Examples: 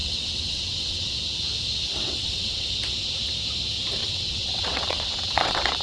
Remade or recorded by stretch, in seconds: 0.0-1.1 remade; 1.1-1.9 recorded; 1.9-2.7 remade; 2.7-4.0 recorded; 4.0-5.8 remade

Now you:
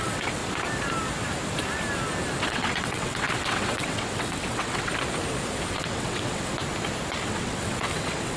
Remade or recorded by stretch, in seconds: 0.0-0.4 remade; 0.4-2.4 recorded; 2.4-4.9 remade; 4.9-5.7 recorded; 5.7-6.5 remade; 6.5-7.2 recorded; 7.2-8.4 remade

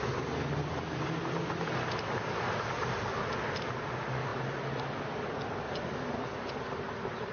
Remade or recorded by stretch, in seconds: 0.0-7.3 recorded

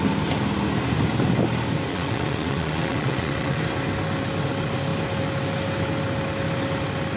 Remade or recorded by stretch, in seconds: 0.0-1.9 recorded; 1.9-3.6 remade; 3.6-7.2 recorded

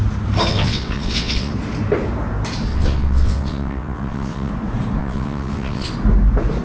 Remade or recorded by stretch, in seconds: 0.0-0.5 recorded; 0.5-1.5 remade; 1.5-2.7 recorded; 2.7-4.5 remade; 4.5-5.0 recorded; 5.0-5.9 remade; 5.9-6.6 recorded

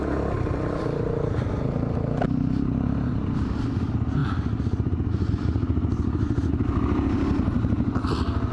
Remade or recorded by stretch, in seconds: 0.0-8.5 recorded

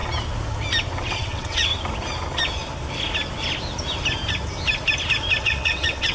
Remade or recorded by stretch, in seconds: 0.0-1.0 recorded; 1.0-1.7 remade; 1.7-5.4 recorded; 5.4-6.1 remade

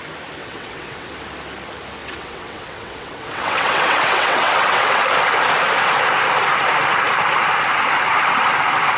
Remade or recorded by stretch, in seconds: 0.0-0.4 recorded; 0.4-1.1 remade; 1.1-2.0 recorded; 2.0-5.0 remade; 5.0-9.0 recorded